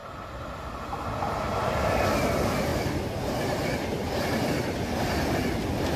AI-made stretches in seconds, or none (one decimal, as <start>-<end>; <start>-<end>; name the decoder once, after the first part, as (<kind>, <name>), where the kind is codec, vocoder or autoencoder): none